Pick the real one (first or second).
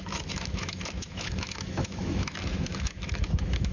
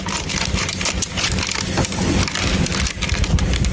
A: second